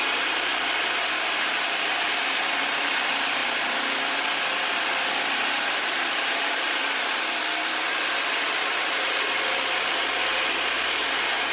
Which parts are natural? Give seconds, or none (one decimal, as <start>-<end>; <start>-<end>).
0.5-1.1; 3.4-5.5; 6.8-10.9